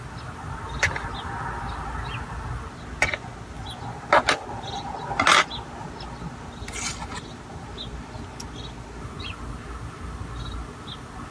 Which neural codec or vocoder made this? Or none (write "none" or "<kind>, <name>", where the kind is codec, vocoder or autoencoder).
none